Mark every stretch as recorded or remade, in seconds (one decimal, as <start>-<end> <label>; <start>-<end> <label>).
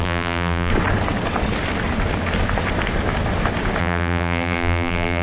0.0-0.7 remade; 0.7-3.8 recorded; 3.8-5.2 remade